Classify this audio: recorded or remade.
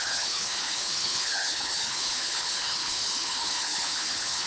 remade